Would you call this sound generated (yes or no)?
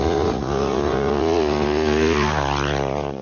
yes